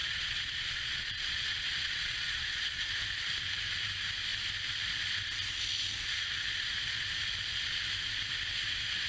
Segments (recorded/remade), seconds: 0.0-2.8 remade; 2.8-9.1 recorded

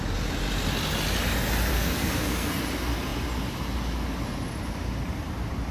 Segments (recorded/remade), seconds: 0.0-1.7 recorded; 1.7-2.6 remade; 2.6-5.7 recorded

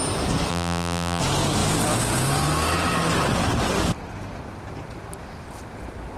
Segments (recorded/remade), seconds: 0.0-0.5 recorded; 0.5-1.2 remade; 1.2-6.2 recorded

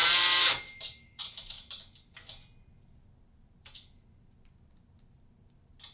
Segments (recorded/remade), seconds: 0.0-1.8 remade; 1.8-5.9 recorded